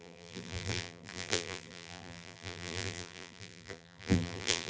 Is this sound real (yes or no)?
no